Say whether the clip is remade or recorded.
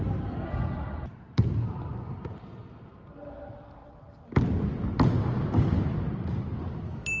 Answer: recorded